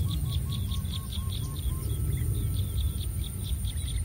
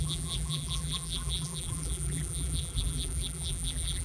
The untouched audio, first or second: first